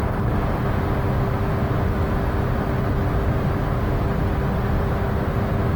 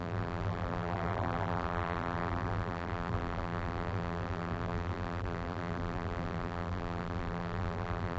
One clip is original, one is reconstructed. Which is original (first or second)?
first